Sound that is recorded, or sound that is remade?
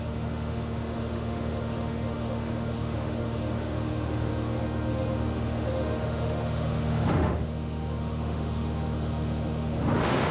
remade